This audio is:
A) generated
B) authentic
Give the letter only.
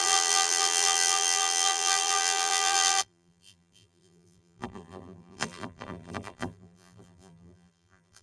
A